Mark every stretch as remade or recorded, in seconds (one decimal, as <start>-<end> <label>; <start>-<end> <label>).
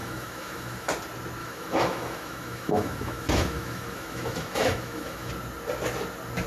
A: 0.0-0.9 remade; 0.9-1.4 recorded; 1.4-5.3 remade; 5.3-6.5 recorded